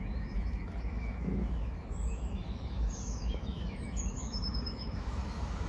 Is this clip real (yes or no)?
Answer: no